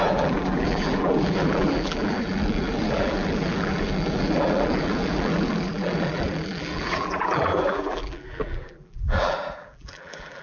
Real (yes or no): no